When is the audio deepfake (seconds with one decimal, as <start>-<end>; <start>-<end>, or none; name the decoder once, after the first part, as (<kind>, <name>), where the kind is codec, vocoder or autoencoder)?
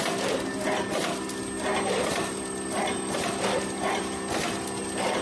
none